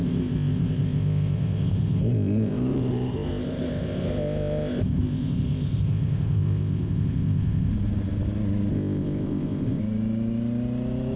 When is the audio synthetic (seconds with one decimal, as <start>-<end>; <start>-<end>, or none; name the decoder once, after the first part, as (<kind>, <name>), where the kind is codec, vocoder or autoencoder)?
0.0-7.7 (codec, ZipCodec); 8.7-9.8